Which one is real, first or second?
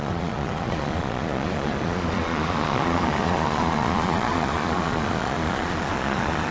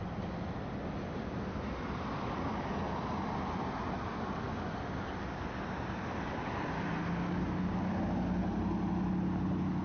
second